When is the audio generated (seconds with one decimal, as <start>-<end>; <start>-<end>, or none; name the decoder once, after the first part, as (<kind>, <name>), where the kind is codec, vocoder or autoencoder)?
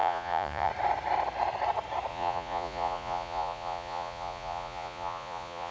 0.0-0.7 (vocoder, Vocos); 2.1-5.7